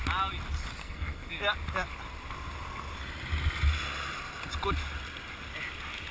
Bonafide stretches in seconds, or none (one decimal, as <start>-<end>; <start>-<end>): 0.0-0.8; 1.3-6.1